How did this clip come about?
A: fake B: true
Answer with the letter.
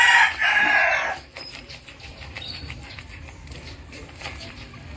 A